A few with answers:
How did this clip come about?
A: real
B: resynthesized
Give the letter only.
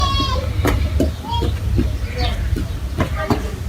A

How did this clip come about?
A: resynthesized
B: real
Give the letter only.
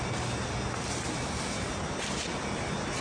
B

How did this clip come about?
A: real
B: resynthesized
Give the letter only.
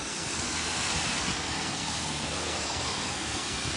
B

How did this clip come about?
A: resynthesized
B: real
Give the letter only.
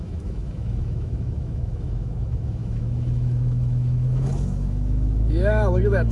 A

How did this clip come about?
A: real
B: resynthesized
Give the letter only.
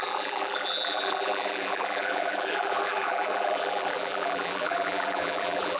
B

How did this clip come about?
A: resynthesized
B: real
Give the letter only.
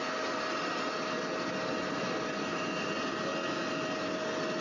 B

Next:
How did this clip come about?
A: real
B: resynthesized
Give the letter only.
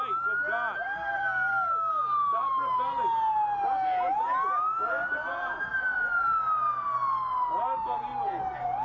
A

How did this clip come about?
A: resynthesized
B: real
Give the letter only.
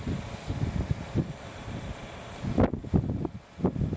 B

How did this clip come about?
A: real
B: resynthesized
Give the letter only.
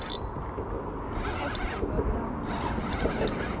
A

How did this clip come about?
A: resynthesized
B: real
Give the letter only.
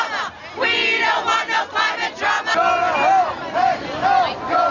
B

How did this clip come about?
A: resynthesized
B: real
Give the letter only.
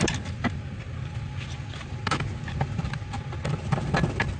B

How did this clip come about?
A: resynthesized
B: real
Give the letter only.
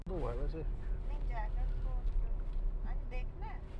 B